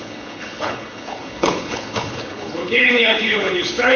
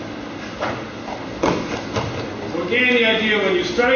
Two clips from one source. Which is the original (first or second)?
second